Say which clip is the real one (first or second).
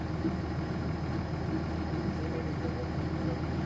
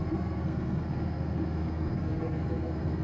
first